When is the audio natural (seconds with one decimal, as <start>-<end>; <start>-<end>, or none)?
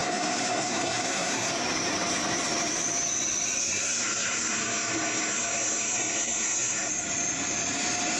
1.5-3.6; 6.9-8.2